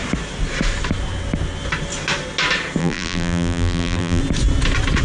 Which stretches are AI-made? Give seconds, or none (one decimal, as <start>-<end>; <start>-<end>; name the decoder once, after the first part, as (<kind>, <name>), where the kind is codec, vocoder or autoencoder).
2.8-4.2 (vocoder, BigVGAN v2)